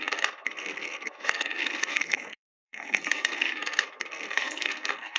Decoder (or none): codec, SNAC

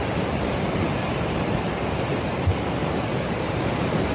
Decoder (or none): vocoder, BigVGAN v2